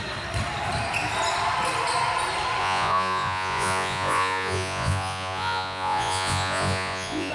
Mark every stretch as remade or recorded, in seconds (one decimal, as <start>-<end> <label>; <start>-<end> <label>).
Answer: 0.0-2.6 recorded; 2.6-7.3 remade